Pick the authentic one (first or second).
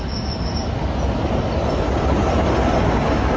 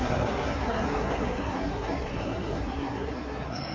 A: first